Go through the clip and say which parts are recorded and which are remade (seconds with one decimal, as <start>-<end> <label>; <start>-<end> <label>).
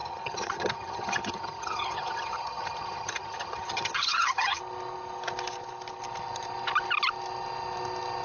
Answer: 0.0-4.6 remade; 4.6-8.2 recorded